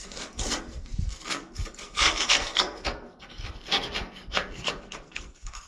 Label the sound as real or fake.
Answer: fake